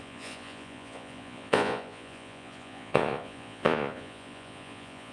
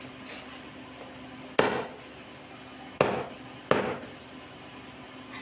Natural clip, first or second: second